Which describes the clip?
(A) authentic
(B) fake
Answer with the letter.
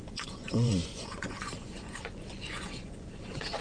B